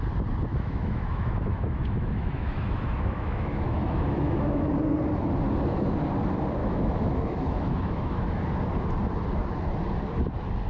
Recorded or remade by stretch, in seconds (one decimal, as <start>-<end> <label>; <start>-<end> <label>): 0.0-0.5 recorded; 0.5-4.7 remade; 4.7-6.6 recorded; 6.6-8.4 remade; 8.4-10.7 recorded